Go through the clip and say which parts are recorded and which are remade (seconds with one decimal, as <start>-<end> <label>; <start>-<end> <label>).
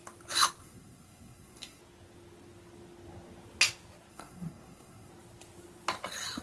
0.0-0.6 recorded; 0.6-1.8 remade; 1.8-4.1 recorded; 4.1-5.1 remade; 5.1-6.4 recorded